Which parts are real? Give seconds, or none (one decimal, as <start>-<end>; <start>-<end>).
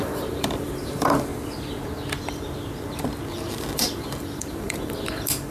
1.3-3.3